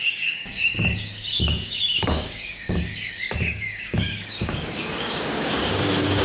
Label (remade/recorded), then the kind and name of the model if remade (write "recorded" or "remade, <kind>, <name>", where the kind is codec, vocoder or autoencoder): remade, codec, DAC